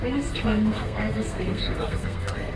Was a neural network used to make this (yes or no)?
yes